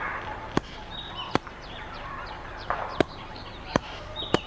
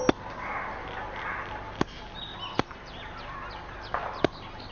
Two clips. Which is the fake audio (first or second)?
first